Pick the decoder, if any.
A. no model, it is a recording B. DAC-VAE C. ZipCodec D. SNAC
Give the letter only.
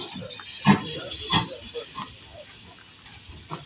A